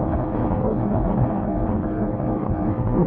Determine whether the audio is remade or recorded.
remade